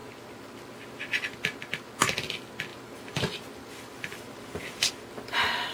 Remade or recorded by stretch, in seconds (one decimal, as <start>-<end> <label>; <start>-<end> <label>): 0.0-2.7 recorded; 2.7-4.9 remade; 4.9-5.7 recorded